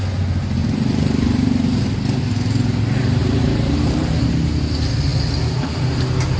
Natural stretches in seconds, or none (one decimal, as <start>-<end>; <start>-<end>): 0.0-0.6; 1.9-3.2; 4.3-6.4

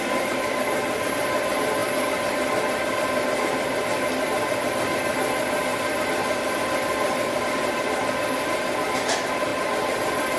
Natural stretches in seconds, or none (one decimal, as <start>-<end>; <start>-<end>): 0.0-5.7; 8.1-9.5